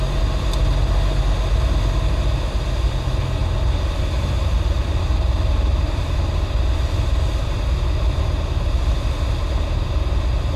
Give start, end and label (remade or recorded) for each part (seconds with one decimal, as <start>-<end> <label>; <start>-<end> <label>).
0.0-10.6 recorded